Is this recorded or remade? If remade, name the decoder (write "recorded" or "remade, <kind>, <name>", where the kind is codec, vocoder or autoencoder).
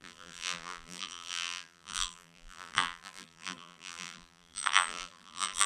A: remade, vocoder, BigVGAN v2